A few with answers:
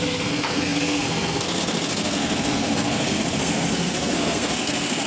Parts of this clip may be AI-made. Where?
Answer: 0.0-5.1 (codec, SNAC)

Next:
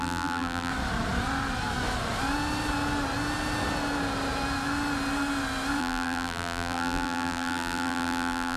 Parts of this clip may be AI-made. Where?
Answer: 0.0-0.7 (vocoder, BigVGAN v2); 5.8-8.6

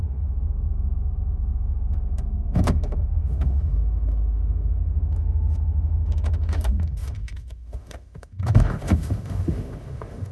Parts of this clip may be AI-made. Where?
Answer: 0.0-10.3 (autoencoder, DAC-VAE)

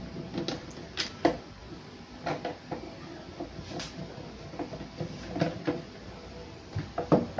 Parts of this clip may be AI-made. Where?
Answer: none

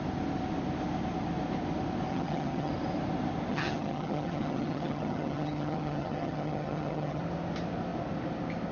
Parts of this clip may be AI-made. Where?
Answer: 2.1-2.7 (vocoder, HiFi-GAN); 3.5-7.2

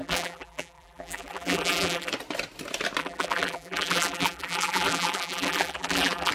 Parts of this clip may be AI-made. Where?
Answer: 0.0-2.1 (vocoder, BigVGAN v2); 3.0-6.3